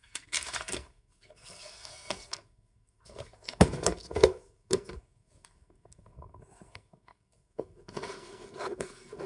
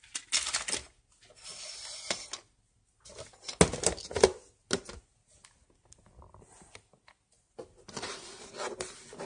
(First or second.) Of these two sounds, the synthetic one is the first